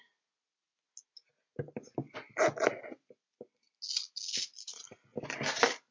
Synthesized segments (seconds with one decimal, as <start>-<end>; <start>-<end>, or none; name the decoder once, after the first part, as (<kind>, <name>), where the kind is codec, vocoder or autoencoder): none